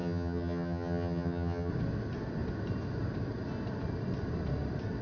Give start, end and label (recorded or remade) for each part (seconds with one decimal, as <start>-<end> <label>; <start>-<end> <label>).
0.0-1.7 remade; 1.7-5.0 recorded